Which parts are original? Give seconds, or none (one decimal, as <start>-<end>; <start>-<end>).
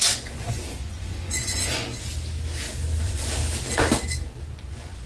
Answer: 1.9-3.0; 3.4-4.5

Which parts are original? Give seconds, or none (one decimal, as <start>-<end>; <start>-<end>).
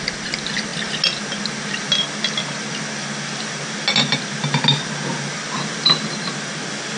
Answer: 0.0-7.0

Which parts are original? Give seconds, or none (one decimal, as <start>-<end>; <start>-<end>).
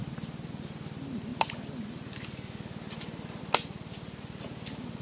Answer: 0.0-5.0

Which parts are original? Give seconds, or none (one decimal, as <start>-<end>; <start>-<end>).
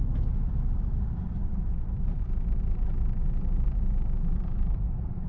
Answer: 0.0-1.4; 2.2-3.2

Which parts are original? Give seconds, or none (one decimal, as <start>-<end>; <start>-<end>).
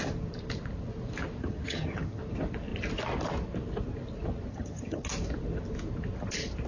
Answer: 0.0-1.4; 2.2-4.5; 5.1-6.7